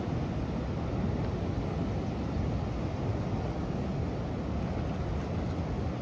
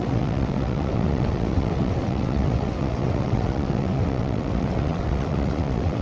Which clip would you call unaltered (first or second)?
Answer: first